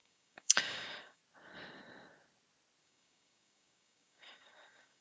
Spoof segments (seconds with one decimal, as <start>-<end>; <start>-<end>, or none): 0.0-1.2; 2.8-5.0